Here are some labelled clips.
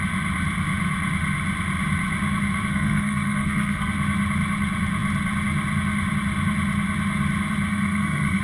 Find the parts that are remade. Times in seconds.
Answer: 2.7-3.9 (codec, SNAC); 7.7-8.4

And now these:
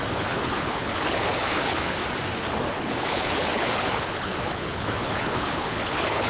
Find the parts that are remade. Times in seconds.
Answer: 0.0-2.0 (codec, HILCodec); 2.7-6.3

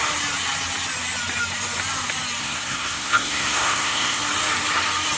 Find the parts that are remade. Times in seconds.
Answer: 2.4-4.2 (codec, SNAC)

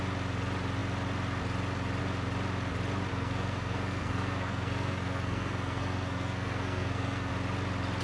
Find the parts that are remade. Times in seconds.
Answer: 3.1-7.3 (codec, SNAC)